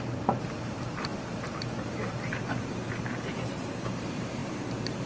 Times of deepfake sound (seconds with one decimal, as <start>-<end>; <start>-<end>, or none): 0.0-5.1

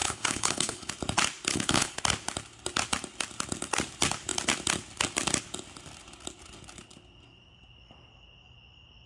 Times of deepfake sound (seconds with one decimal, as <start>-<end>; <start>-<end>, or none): 0.0-0.9; 1.5-2.0

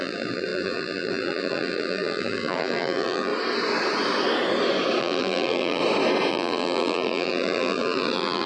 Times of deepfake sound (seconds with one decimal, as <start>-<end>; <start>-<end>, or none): 0.0-3.3; 5.0-5.8; 6.3-8.5

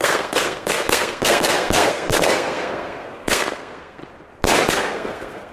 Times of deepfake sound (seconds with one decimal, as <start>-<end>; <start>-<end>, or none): 0.0-4.0; 4.7-5.5

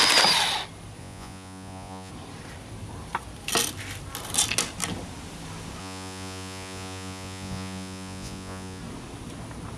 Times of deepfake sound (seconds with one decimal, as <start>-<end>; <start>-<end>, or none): 1.0-2.1; 5.8-8.8